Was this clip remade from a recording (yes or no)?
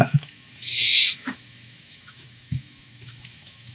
yes